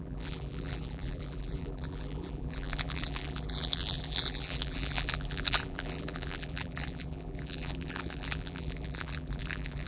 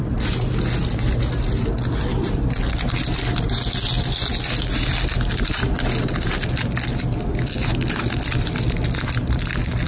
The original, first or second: second